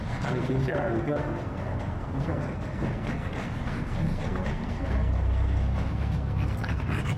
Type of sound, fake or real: fake